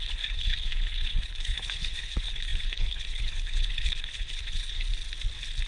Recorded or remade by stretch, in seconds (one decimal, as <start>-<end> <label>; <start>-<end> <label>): 0.0-4.9 remade; 4.9-5.7 recorded